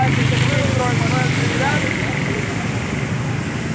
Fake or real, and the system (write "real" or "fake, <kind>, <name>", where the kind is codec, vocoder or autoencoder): real